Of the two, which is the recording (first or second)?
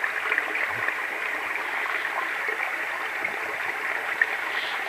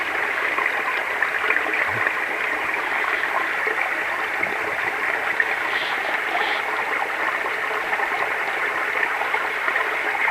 first